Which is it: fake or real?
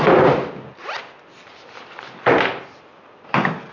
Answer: real